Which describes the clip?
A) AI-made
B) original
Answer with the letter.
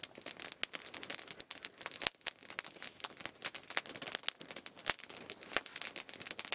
B